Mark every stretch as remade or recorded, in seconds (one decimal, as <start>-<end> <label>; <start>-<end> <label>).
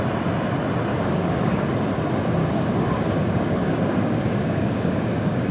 0.0-0.9 recorded; 0.9-1.7 remade; 1.7-2.4 recorded; 2.4-5.5 remade